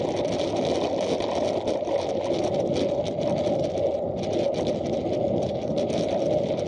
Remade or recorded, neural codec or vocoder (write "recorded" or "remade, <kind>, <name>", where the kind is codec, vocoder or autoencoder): recorded